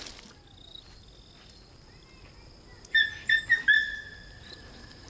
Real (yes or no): yes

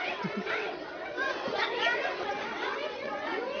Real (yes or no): no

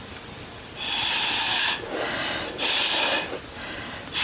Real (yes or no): yes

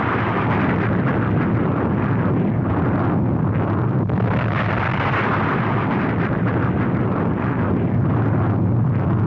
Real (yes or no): yes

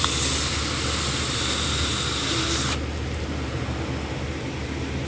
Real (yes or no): yes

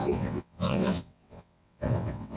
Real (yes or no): no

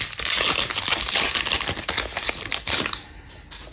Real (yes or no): yes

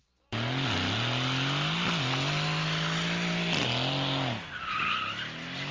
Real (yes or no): yes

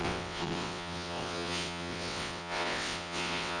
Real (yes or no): no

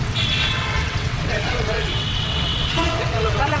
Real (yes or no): no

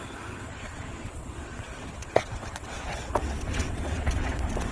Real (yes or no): no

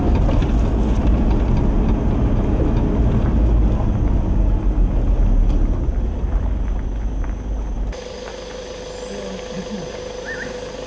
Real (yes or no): yes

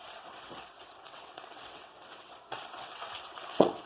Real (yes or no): no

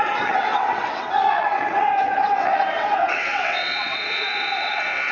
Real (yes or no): no